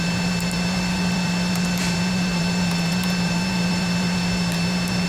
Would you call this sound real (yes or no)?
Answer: no